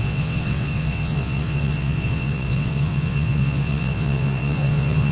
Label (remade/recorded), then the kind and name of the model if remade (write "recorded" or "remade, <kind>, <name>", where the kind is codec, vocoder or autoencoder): remade, vocoder, WaveNeXt